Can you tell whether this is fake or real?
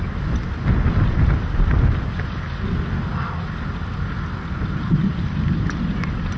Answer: real